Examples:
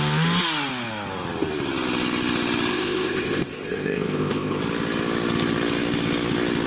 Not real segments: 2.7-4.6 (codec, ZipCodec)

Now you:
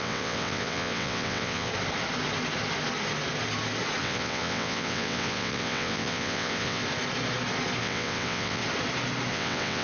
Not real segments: 0.0-1.7 (vocoder, WaveNeXt); 4.0-6.8; 7.8-8.6; 9.3-9.8

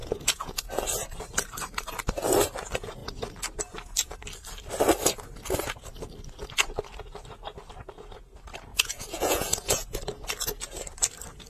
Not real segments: 0.0-0.7 (vocoder, Vocos); 8.7-10.0

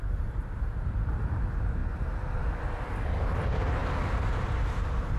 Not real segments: none

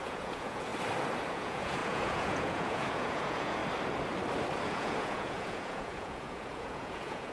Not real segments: 0.0-0.7 (vocoder, Vocos); 1.3-3.6; 4.7-7.3

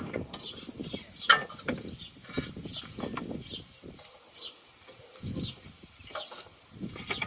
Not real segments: none

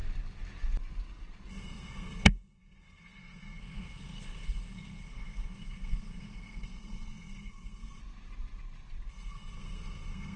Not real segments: 1.5-8.0 (codec, SNAC); 9.1-10.4